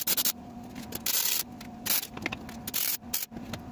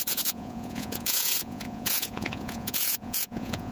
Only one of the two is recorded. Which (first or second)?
first